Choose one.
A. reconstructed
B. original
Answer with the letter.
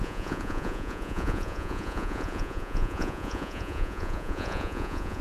A